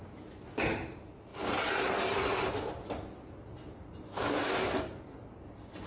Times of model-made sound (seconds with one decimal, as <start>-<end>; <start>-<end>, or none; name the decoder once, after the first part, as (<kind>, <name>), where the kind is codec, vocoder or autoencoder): none